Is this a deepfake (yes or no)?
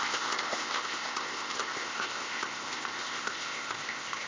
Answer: yes